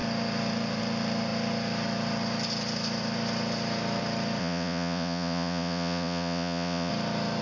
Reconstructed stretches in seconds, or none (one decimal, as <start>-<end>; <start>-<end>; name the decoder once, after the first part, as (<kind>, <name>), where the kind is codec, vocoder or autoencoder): 4.4-6.9 (vocoder, Vocos)